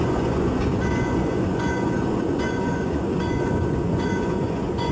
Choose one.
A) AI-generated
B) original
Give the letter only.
A